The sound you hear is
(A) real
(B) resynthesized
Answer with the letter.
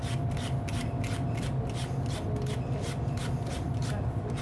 A